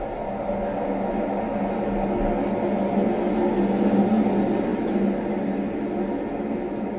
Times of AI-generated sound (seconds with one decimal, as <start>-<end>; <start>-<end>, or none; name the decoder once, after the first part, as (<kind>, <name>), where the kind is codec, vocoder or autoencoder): none